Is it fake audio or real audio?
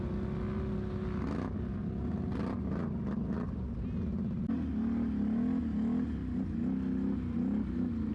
real